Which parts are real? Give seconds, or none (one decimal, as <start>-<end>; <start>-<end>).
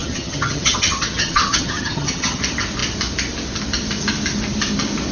2.4-5.1